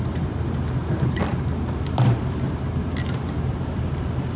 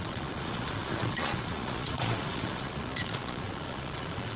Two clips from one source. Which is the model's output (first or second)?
second